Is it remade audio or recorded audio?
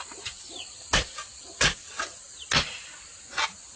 recorded